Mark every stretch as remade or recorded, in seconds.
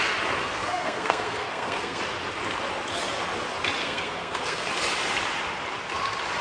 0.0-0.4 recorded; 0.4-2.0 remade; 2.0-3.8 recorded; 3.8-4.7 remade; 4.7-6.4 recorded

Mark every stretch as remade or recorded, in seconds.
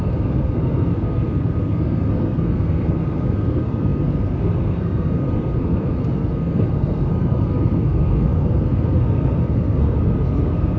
0.0-10.8 remade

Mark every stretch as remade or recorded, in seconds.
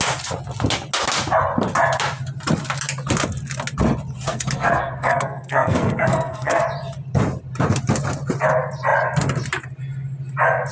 0.0-4.3 recorded; 4.3-6.6 remade; 6.6-10.7 recorded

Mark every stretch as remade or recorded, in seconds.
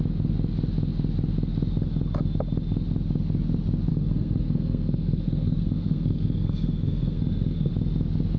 0.0-3.9 recorded; 3.9-7.7 remade; 7.7-8.4 recorded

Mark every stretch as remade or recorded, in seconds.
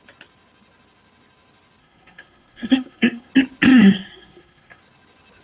0.0-1.8 recorded; 1.8-3.3 remade; 3.3-3.7 recorded; 3.7-4.8 remade; 4.8-5.4 recorded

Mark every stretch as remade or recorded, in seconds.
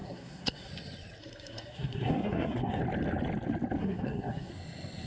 0.0-0.7 remade; 0.7-1.2 recorded; 1.2-2.8 remade; 2.8-3.8 recorded; 3.8-4.5 remade; 4.5-5.1 recorded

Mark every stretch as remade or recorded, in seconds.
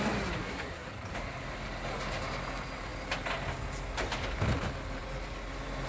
0.0-0.4 recorded; 0.4-0.9 remade; 0.9-5.9 recorded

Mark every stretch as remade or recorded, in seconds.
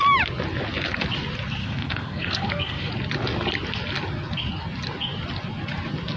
0.0-1.6 recorded; 1.6-2.9 remade; 2.9-6.2 recorded